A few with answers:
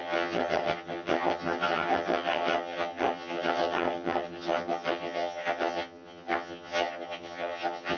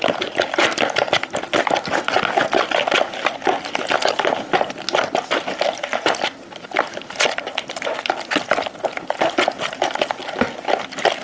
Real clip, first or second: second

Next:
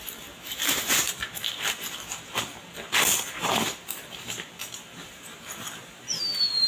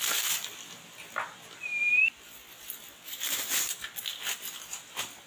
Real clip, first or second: second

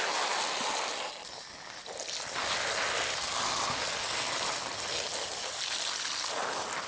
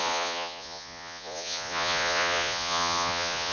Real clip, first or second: first